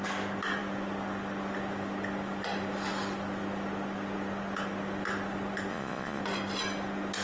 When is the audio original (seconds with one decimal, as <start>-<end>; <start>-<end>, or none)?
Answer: 0.0-5.7; 6.2-7.2